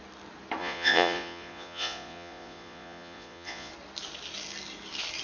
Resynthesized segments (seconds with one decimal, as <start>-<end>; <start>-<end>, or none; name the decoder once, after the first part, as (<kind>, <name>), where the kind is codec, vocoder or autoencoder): 0.6-3.7 (vocoder, Vocos)